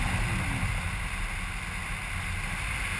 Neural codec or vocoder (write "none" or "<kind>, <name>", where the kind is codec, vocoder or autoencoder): none